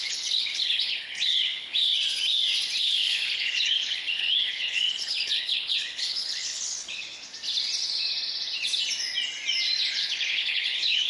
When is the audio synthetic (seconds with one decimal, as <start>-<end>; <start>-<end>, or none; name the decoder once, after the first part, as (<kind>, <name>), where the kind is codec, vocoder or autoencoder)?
0.0-1.9 (codec, HILCodec); 2.8-7.3; 9.9-11.1